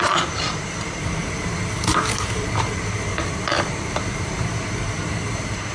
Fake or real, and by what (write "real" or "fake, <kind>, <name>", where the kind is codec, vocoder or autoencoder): fake, vocoder, BigVGAN v2